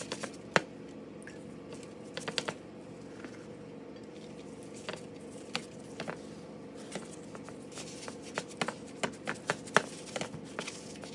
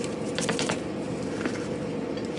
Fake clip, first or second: second